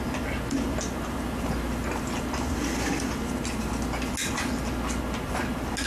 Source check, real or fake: real